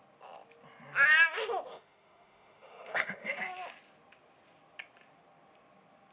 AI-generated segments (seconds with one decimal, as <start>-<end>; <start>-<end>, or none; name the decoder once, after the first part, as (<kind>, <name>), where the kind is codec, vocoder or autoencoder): 1.7-3.4 (autoencoder, DAC-VAE)